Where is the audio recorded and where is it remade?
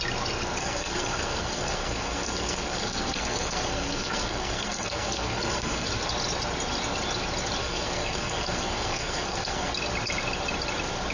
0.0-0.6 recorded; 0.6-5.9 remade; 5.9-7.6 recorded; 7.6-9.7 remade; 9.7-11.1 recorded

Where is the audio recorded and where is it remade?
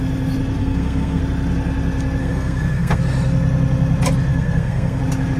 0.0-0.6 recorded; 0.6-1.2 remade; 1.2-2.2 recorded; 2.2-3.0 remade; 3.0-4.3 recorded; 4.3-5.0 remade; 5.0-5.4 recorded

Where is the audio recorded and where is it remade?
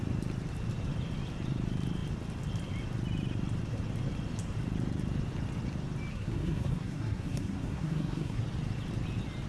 0.0-6.1 recorded; 6.1-8.4 remade; 8.4-9.5 recorded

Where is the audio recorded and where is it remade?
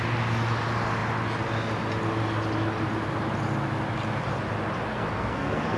0.0-4.9 recorded; 4.9-5.8 remade